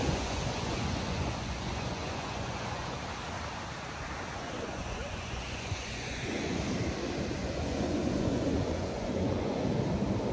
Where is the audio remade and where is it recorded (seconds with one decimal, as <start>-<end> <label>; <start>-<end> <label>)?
0.0-3.0 remade; 3.0-4.3 recorded; 4.3-6.6 remade; 6.6-7.4 recorded; 7.4-9.7 remade; 9.7-10.3 recorded